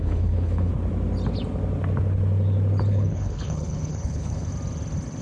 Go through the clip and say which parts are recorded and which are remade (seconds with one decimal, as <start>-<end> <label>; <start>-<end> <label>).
0.0-0.7 remade; 0.7-2.9 recorded; 2.9-4.5 remade; 4.5-5.2 recorded